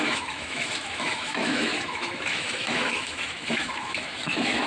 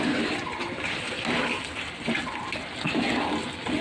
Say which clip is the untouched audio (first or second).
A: second